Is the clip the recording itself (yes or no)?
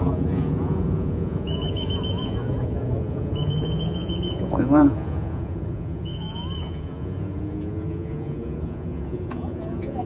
no